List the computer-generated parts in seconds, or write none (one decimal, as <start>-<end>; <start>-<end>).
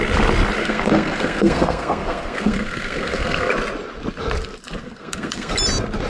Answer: 0.6-3.5; 4.8-5.5